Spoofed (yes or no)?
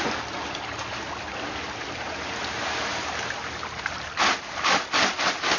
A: no